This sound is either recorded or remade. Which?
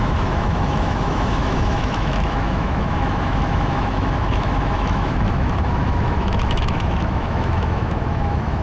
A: remade